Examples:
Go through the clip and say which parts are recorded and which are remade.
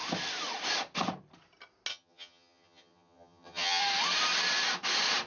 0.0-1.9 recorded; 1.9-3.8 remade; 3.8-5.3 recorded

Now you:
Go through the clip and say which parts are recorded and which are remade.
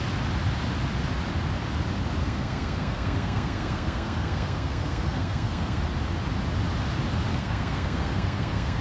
0.0-2.2 recorded; 2.2-5.8 remade; 5.8-7.3 recorded; 7.3-8.8 remade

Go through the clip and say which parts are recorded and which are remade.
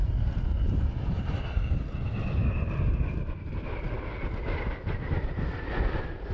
0.0-6.3 recorded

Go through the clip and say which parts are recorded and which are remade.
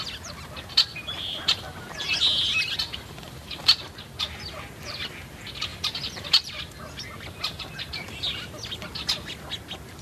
0.0-3.0 recorded; 3.0-3.8 remade; 3.8-5.7 recorded; 5.7-6.6 remade; 6.6-10.0 recorded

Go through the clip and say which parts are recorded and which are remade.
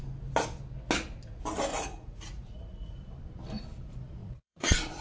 0.0-1.7 recorded; 1.7-3.0 remade; 3.0-4.2 recorded; 4.2-5.0 remade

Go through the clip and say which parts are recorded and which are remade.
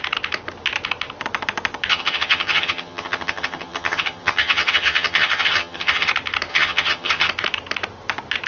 0.0-1.9 recorded; 1.9-6.1 remade; 6.1-6.5 recorded; 6.5-7.3 remade; 7.3-8.5 recorded